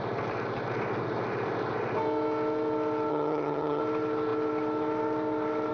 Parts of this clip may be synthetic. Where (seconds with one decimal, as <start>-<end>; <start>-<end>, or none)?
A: 3.1-3.8